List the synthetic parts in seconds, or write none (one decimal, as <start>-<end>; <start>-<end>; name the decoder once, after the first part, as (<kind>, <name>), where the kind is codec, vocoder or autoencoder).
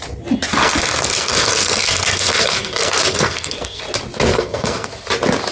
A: 0.6-3.8 (codec, SNAC); 4.3-4.9